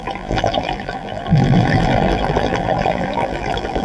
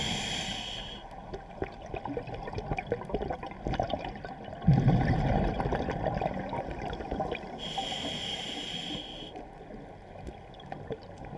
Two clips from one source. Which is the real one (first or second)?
second